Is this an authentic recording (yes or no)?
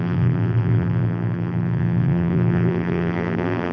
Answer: no